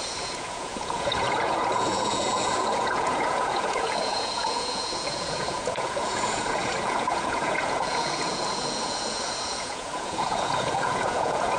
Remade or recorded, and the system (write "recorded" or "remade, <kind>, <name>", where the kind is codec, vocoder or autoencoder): remade, vocoder, Vocos